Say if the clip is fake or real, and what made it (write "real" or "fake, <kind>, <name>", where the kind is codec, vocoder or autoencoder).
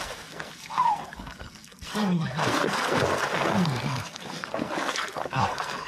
fake, codec, SNAC